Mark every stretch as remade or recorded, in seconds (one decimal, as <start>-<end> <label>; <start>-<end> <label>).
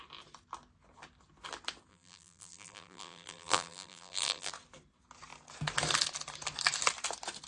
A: 0.0-1.9 recorded; 1.9-4.5 remade; 4.5-7.5 recorded